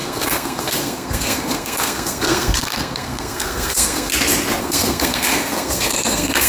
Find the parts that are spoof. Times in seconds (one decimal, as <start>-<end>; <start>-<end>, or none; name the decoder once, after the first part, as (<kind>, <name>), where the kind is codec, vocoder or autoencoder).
0.0-4.1 (codec, SNAC); 4.6-6.5

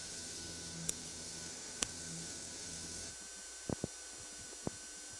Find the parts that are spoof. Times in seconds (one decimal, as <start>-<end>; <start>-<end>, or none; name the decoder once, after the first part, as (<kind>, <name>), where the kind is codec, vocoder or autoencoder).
0.0-3.1 (codec, SNAC)

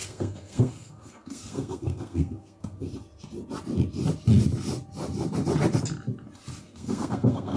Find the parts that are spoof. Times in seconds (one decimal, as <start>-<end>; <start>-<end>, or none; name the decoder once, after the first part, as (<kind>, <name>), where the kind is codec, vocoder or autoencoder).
0.0-2.9 (codec, SNAC); 6.6-7.6

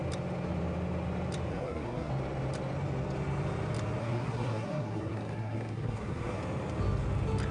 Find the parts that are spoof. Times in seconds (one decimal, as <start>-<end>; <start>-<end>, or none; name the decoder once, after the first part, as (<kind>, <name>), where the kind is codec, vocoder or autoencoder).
1.5-2.1 (codec, SNAC); 4.0-6.4

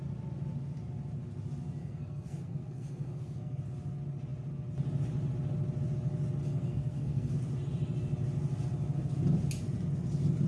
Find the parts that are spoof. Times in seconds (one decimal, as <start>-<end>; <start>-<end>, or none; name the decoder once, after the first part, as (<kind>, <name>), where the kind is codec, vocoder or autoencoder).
1.8-3.6 (codec, SNAC); 6.4-7.3

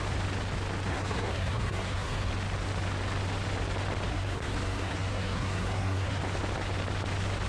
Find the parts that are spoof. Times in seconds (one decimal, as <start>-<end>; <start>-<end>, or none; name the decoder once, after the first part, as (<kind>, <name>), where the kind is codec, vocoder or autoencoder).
0.9-2.3 (codec, SNAC); 4.1-6.2